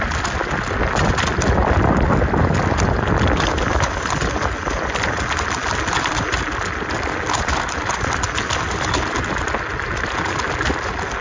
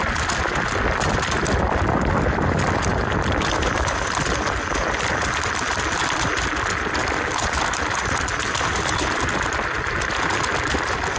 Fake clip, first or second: second